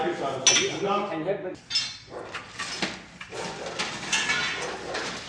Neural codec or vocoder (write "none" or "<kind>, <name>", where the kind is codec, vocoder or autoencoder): none